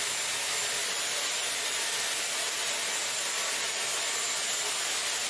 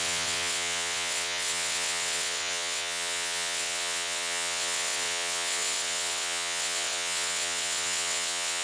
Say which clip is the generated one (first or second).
second